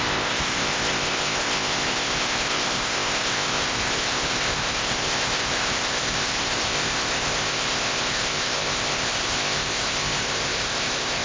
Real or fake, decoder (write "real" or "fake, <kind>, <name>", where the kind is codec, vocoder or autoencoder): fake, codec, ZipCodec